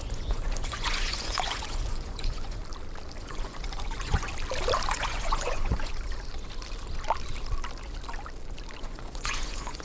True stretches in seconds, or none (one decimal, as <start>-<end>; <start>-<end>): 2.6-3.2; 4.3-4.9; 5.9-8.8